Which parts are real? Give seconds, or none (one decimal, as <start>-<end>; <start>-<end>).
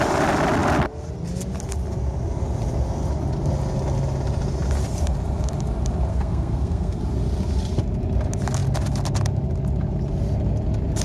0.0-6.1; 7.0-11.0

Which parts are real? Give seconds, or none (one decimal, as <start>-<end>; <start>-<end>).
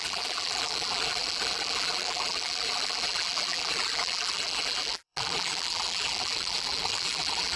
none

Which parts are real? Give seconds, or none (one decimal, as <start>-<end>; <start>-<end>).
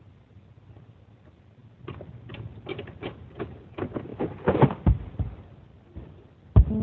0.0-6.8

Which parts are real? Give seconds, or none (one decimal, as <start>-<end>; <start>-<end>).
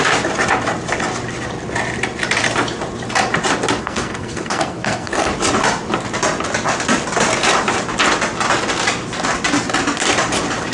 0.0-3.8; 5.3-10.7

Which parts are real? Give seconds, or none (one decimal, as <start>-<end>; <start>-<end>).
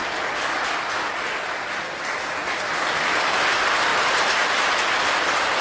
0.0-5.6